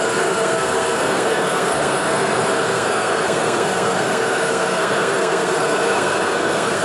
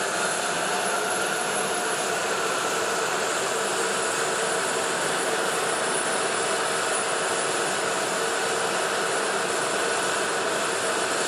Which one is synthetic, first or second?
first